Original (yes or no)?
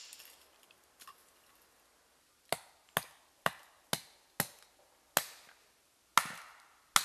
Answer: yes